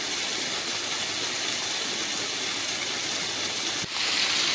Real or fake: real